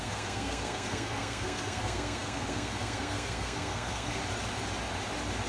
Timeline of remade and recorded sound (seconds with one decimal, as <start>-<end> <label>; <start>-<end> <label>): 0.0-4.2 remade; 4.2-5.5 recorded